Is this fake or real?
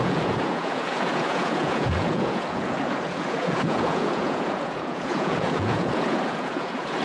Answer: fake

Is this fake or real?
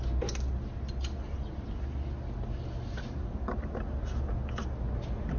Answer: real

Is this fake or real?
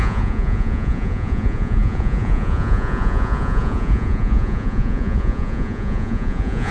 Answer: fake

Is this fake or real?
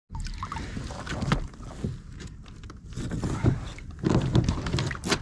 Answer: real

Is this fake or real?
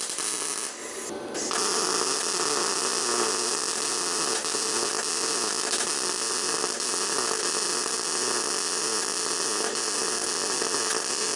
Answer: real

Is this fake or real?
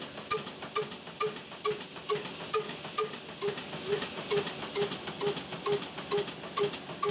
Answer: real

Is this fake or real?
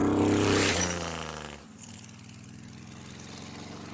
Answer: real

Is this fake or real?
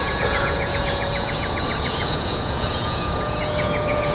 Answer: fake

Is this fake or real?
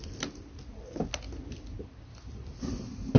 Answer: real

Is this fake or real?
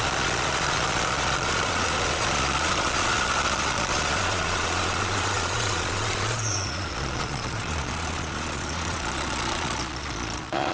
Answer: fake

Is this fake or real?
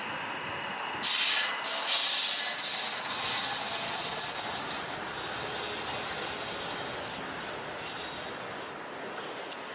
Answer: real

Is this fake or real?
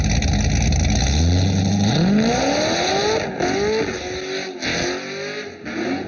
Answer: real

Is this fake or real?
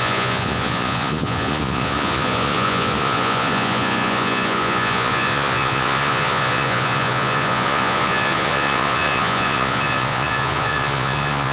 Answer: fake